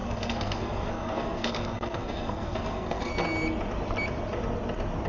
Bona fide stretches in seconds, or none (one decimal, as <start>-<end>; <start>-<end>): 3.1-5.1

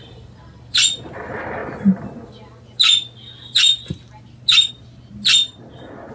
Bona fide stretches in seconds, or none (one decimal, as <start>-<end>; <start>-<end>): 0.0-6.1

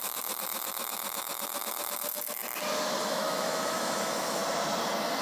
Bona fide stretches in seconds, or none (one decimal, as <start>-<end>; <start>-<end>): 2.4-3.0; 4.4-5.2

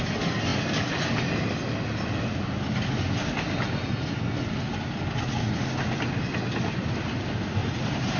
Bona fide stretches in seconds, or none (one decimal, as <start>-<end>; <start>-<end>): 0.0-7.6

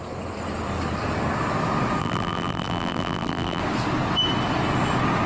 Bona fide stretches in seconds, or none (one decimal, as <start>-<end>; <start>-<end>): 0.0-2.0; 3.6-5.3

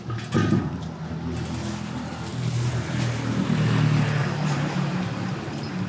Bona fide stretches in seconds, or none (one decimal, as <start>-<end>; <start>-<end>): 0.0-5.9

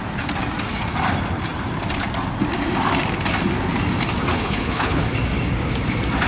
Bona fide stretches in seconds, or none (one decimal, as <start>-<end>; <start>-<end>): 0.0-4.3; 5.0-6.3